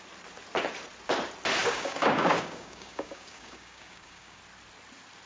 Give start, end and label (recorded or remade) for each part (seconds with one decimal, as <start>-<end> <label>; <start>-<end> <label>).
0.0-1.6 recorded; 1.6-4.4 remade; 4.4-5.3 recorded